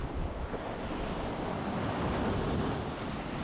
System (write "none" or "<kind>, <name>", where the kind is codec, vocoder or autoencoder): none